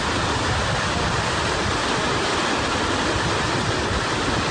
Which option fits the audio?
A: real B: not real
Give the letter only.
A